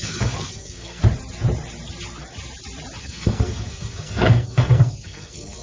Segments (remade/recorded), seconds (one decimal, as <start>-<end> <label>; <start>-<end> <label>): 0.0-1.0 remade; 1.0-3.0 recorded; 3.0-5.6 remade